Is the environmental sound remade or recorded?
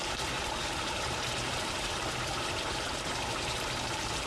remade